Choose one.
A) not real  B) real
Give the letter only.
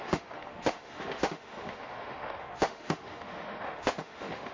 A